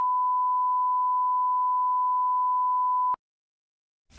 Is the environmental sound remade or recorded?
recorded